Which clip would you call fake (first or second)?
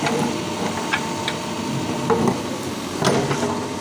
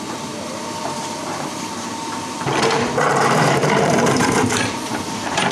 second